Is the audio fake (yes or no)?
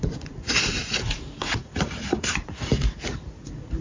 yes